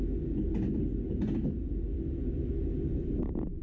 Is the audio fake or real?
real